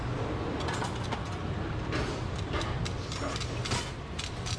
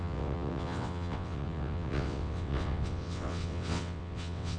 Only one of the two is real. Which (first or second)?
first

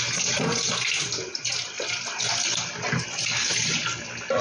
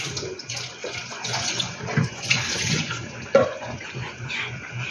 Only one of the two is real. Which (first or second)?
first